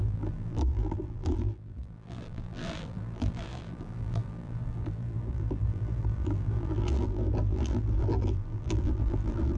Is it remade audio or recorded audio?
remade